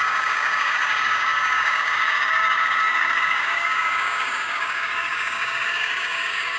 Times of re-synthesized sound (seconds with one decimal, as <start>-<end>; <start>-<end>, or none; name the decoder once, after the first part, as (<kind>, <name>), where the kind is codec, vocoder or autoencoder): 0.0-6.6 (codec, DAC)

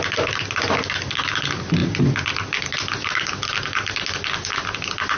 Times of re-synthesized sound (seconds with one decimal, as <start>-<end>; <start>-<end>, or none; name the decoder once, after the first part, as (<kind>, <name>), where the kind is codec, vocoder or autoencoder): none

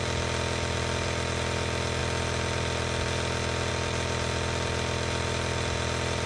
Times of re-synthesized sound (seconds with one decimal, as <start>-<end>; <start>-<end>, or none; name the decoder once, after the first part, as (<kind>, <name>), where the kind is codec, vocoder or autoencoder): none

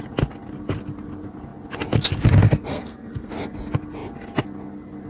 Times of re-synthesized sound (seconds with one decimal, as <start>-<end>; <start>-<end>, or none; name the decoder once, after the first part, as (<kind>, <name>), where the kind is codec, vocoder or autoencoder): 2.7-3.3 (codec, SNAC)